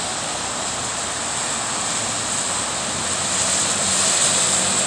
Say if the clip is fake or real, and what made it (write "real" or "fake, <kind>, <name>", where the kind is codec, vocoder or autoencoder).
real